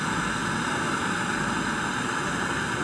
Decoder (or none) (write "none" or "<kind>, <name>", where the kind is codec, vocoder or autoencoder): none